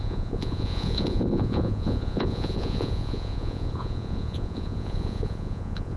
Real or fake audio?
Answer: fake